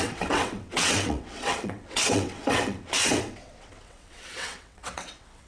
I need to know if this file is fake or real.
fake